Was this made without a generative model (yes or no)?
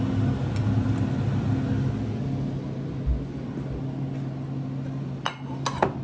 yes